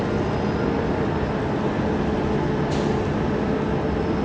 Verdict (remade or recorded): recorded